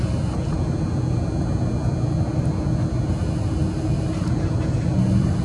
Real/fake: real